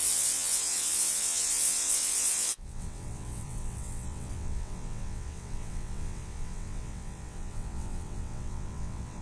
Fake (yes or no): yes